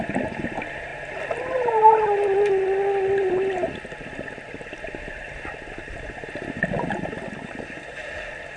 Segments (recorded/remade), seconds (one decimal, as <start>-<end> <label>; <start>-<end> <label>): 0.0-8.6 recorded